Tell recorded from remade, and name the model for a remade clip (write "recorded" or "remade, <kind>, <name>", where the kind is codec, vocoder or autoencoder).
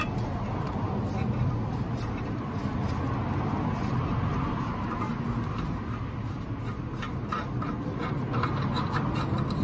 recorded